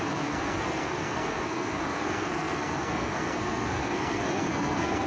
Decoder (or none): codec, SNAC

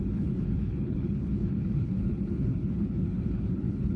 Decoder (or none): codec, HILCodec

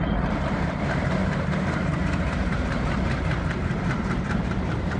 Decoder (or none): vocoder, BigVGAN v2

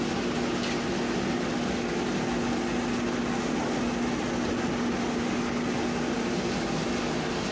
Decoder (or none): none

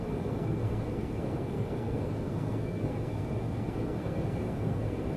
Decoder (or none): codec, SNAC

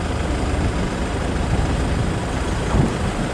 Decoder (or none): none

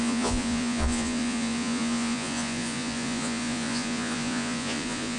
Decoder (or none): vocoder, Vocos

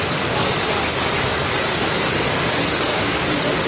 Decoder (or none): codec, DAC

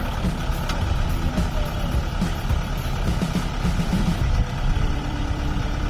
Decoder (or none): vocoder, BigVGAN v2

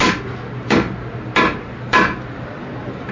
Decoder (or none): none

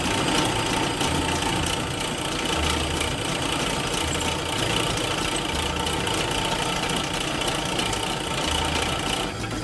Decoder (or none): none